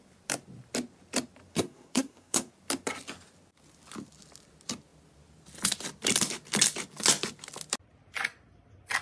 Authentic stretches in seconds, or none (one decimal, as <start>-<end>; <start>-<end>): 0.0-1.5; 2.5-9.0